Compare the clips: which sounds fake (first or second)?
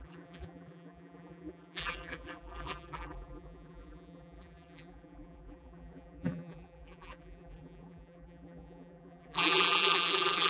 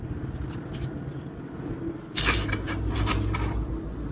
first